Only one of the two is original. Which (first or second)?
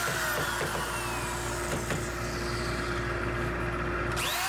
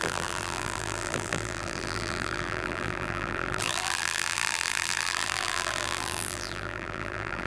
first